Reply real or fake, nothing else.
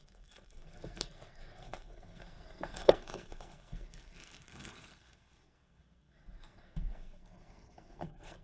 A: fake